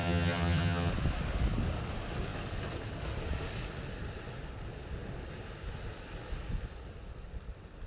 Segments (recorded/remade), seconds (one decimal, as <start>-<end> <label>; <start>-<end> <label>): 0.0-0.9 remade; 0.9-7.9 recorded